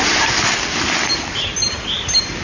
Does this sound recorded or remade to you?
recorded